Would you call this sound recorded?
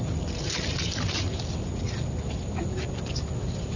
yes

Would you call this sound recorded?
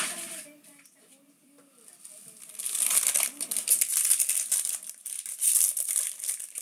yes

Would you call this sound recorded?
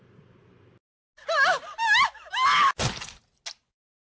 yes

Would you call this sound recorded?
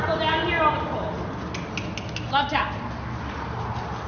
yes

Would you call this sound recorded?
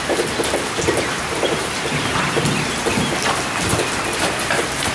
yes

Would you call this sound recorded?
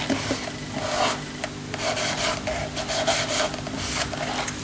yes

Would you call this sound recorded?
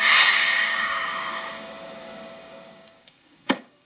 no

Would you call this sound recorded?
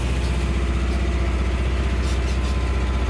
yes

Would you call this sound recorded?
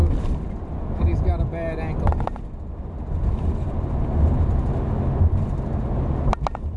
yes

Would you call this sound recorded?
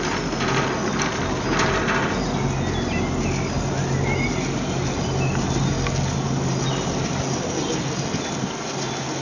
yes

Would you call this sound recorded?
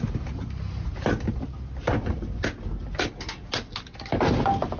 yes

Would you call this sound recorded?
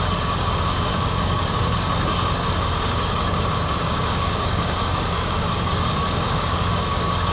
no